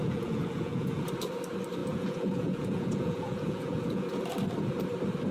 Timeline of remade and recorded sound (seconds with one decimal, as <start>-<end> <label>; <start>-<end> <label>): 0.0-1.1 remade; 1.1-1.8 recorded; 1.8-4.2 remade; 4.2-5.3 recorded

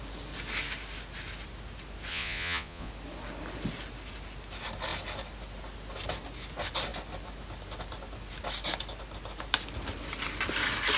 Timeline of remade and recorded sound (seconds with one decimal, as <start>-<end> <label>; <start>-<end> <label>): 0.0-2.1 recorded; 2.1-2.9 remade; 2.9-11.0 recorded